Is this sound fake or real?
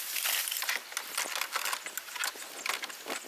real